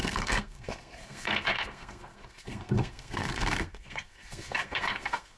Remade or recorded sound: remade